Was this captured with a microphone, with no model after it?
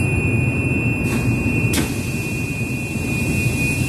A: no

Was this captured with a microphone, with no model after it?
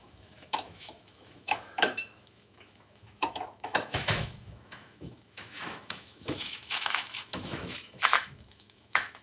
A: no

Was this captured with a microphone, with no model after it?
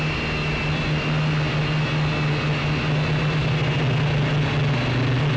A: yes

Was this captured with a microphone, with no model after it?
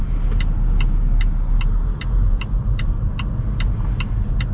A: yes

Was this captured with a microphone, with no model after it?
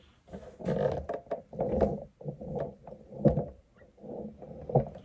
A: yes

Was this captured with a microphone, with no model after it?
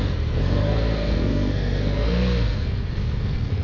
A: no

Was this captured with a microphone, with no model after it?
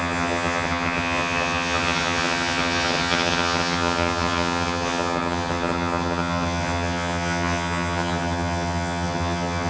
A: no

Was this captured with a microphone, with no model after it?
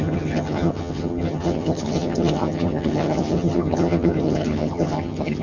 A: no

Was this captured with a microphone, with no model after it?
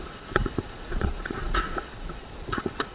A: no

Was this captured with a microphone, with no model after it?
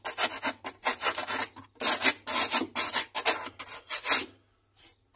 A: yes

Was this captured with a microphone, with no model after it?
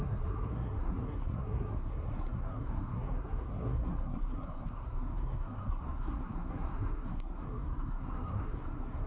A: no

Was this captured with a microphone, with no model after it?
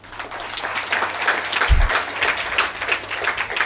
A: yes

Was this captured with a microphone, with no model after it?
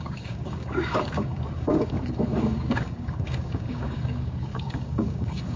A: no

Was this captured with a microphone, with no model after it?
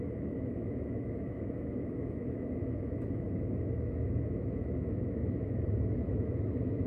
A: no